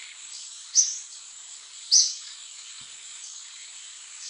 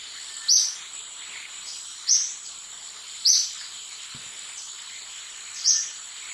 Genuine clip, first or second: second